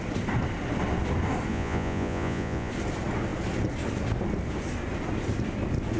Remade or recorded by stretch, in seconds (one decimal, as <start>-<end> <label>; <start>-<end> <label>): 0.0-1.5 recorded; 1.5-2.7 remade; 2.7-6.0 recorded